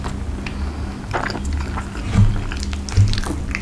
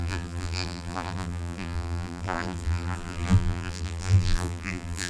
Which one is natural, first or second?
first